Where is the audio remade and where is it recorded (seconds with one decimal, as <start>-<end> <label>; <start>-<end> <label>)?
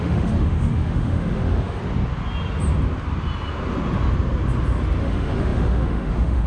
0.0-1.8 remade; 1.8-5.0 recorded; 5.0-6.5 remade